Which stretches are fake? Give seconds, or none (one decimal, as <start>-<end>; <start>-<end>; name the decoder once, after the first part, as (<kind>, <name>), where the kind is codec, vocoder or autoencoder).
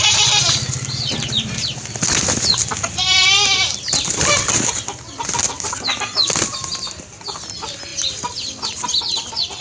none